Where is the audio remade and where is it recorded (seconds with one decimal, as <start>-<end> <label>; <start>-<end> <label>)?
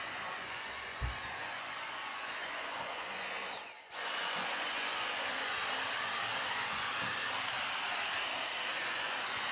0.0-5.6 remade; 5.6-6.5 recorded; 6.5-6.9 remade; 6.9-8.8 recorded; 8.8-9.5 remade